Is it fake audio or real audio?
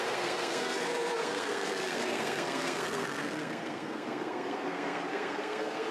fake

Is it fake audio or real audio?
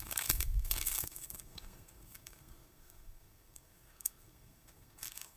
fake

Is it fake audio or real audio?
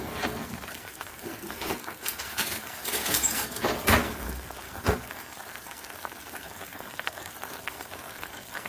fake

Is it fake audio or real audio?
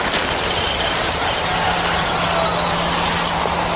real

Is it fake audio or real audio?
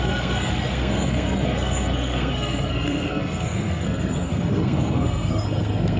fake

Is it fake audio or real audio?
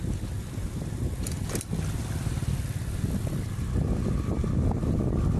real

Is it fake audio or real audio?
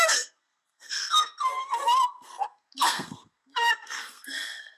fake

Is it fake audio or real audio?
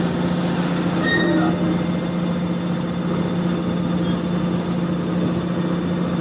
real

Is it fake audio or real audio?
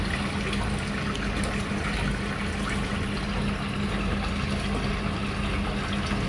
real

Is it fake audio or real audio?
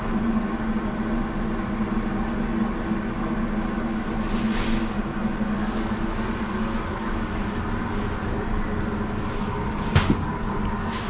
real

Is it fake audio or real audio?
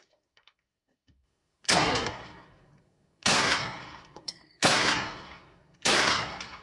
fake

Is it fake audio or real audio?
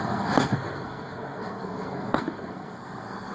fake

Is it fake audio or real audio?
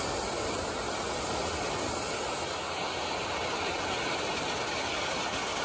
real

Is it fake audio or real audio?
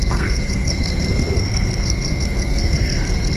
fake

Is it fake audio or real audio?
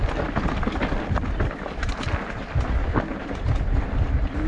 real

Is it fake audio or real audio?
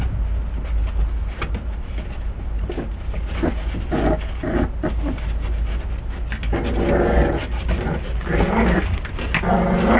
real